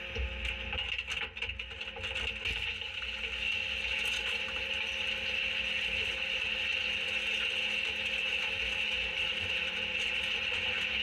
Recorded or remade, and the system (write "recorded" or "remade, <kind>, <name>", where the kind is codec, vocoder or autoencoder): recorded